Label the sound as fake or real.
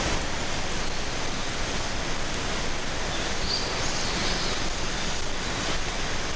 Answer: real